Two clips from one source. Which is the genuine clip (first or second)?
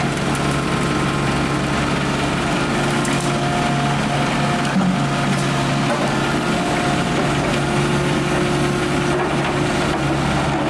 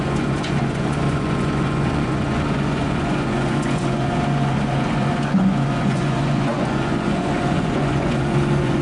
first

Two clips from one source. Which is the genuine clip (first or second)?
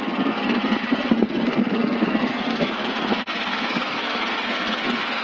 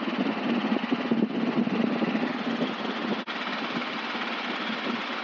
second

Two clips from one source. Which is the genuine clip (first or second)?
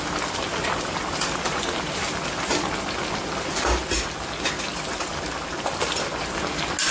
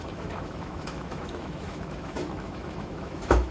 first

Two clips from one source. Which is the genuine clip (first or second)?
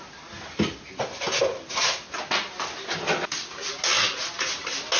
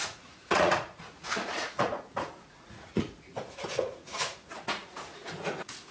first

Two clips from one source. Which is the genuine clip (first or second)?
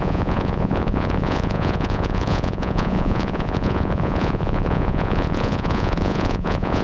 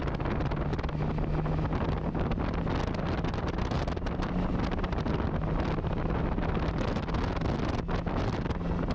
second